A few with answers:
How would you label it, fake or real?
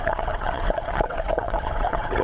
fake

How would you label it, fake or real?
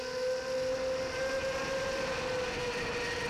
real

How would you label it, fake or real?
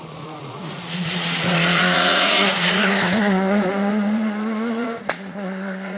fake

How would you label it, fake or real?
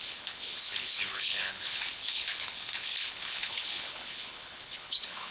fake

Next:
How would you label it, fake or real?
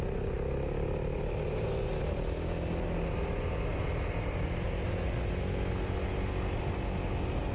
real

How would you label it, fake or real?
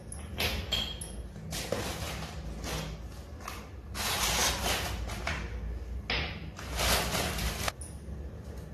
real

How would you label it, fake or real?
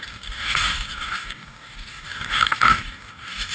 fake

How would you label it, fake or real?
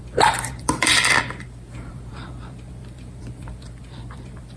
fake